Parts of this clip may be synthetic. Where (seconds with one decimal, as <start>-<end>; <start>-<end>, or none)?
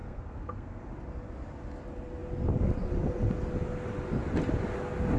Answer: 0.0-0.8